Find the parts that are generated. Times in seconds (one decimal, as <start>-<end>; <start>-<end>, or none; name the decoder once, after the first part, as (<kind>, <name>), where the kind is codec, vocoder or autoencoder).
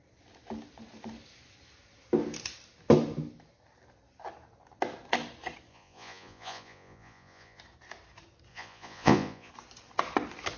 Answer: 5.7-7.6 (vocoder, Vocos); 8.5-9.5